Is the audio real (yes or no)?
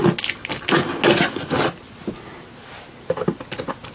yes